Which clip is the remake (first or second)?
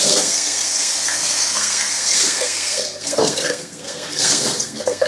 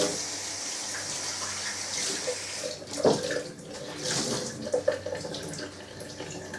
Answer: first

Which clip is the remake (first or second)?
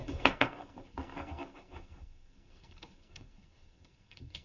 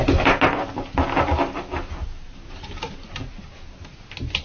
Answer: first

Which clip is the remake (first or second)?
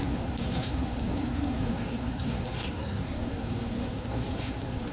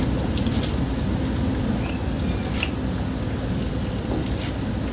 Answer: first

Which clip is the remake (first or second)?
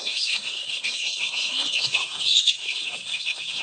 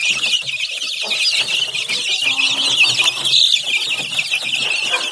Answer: first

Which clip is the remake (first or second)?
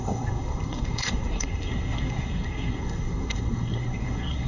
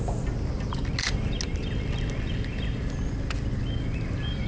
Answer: first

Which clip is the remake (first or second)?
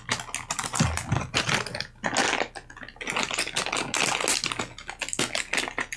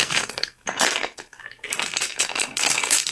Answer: second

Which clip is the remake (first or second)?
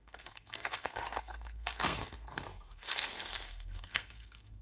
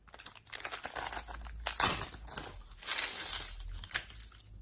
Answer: first